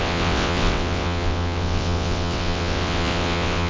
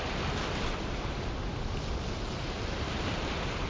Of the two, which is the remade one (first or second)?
first